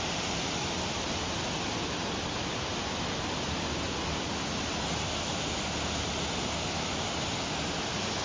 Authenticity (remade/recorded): recorded